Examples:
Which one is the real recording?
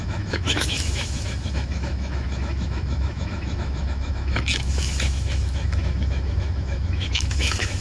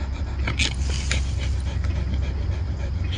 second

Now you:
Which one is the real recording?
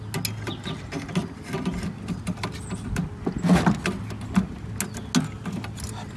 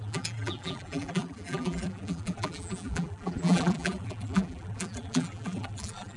first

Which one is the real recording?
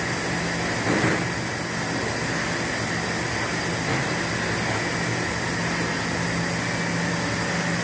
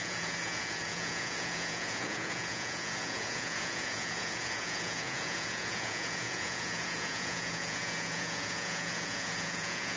first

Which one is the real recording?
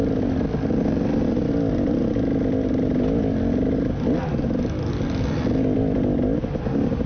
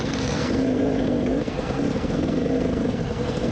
first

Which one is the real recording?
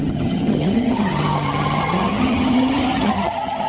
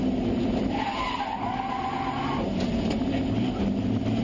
second